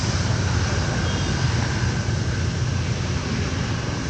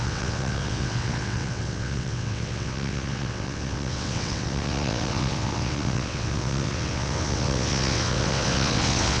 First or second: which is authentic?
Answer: first